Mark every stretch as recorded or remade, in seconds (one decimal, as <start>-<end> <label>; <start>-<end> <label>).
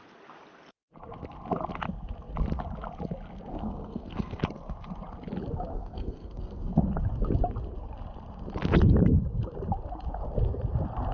0.0-3.5 recorded; 3.5-4.4 remade; 4.4-5.7 recorded; 5.7-6.7 remade; 6.7-11.1 recorded